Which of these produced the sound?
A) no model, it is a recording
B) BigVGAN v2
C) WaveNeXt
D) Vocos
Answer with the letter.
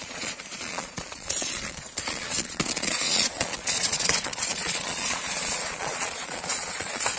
D